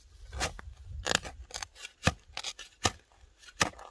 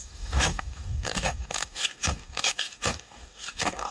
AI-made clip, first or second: second